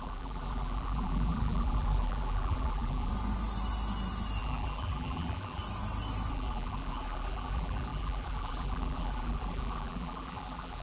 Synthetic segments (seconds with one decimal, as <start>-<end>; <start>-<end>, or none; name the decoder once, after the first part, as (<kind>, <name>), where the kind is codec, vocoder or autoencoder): 0.0-3.1 (vocoder, BigVGAN v2); 4.4-5.6; 6.3-10.8